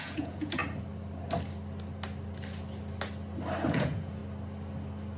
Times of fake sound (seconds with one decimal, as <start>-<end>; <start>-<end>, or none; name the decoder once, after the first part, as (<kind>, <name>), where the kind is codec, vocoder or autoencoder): 0.0-0.6 (vocoder, Vocos); 3.7-4.2